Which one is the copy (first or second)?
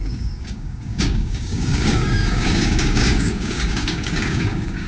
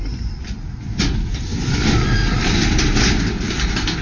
first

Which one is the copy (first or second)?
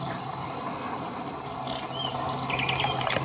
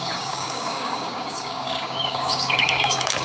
second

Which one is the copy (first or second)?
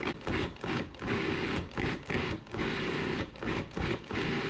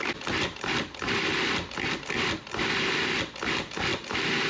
first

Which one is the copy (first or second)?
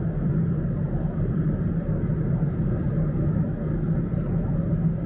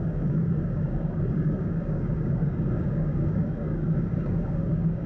second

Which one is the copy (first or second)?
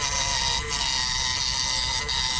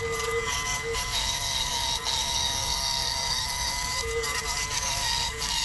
second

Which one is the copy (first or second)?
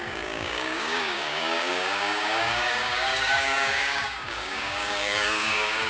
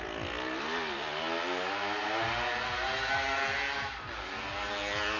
first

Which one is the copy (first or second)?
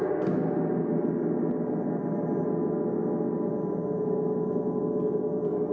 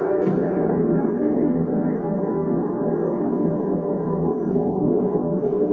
second